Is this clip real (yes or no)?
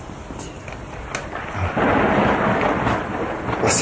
yes